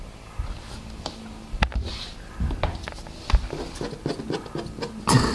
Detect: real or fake real